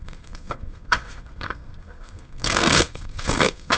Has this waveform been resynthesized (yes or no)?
yes